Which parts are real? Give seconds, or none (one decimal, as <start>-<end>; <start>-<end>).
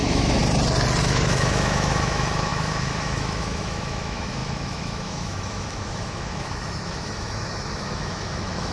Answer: 0.4-1.0